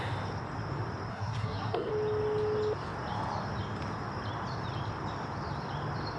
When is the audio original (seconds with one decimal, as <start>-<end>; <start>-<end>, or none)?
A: 0.0-1.1; 1.9-6.2